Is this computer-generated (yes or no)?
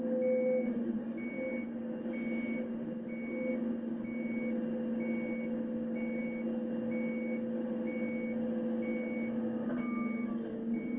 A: no